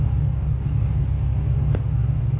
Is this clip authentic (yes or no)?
no